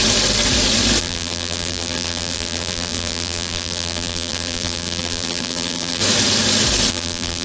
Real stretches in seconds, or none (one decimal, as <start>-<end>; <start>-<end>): 0.0-1.0; 6.0-6.9